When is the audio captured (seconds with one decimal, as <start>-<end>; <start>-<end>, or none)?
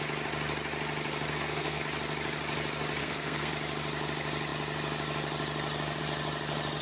0.0-1.3; 1.8-3.0; 3.5-6.8